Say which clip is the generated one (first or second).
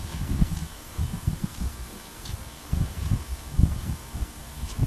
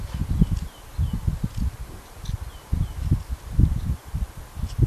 first